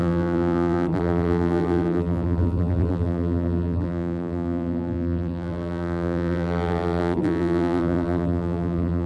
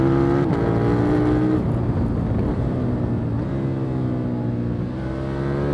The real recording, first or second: second